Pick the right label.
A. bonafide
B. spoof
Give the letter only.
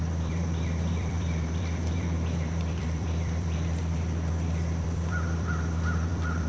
B